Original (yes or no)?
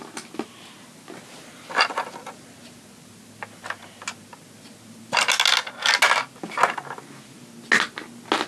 yes